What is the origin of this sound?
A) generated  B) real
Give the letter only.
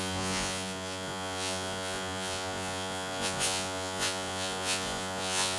A